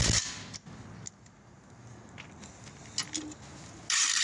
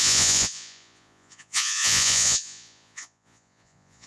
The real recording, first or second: first